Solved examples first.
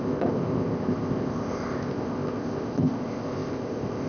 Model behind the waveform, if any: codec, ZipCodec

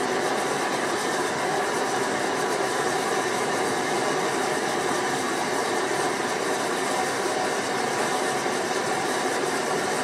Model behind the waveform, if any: vocoder, BigVGAN v2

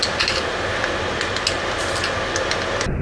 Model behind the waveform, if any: none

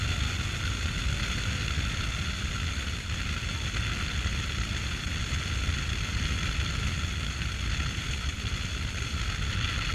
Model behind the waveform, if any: none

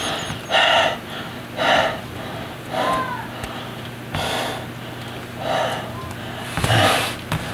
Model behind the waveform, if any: none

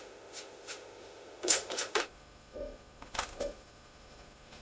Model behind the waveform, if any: autoencoder, DAC-VAE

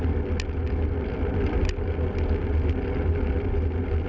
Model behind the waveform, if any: none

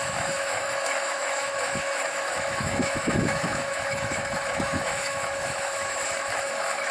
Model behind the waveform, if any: autoencoder, DAC-VAE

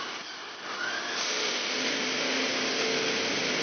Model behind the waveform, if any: none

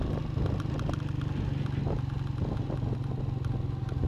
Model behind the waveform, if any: none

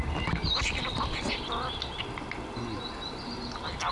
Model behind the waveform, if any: none